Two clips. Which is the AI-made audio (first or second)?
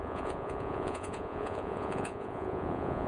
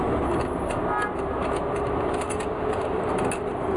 first